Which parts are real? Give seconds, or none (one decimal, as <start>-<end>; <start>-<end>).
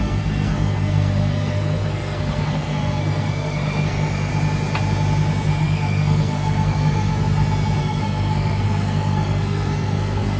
4.3-5.6; 7.1-7.8